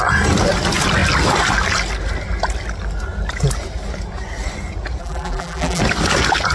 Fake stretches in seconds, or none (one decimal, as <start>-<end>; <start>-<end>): 5.0-5.8